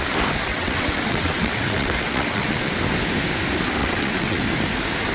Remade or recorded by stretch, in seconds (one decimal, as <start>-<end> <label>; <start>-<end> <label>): 0.0-0.5 recorded; 0.5-2.7 remade; 2.7-3.8 recorded; 3.8-4.4 remade; 4.4-5.1 recorded